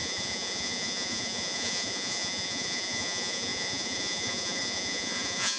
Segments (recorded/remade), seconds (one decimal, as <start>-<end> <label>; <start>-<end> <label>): 0.0-5.6 remade